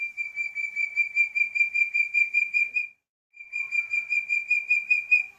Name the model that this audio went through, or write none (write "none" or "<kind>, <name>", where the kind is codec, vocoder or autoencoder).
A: none